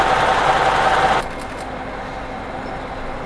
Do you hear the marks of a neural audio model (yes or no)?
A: no